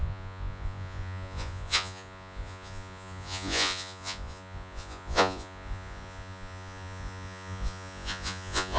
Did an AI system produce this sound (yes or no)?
yes